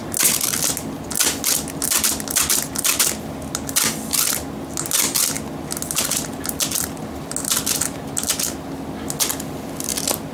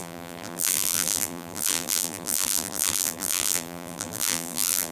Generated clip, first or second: second